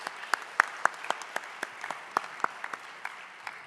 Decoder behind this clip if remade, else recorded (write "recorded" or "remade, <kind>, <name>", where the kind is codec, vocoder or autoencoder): recorded